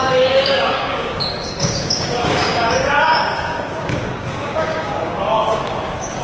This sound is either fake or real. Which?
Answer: fake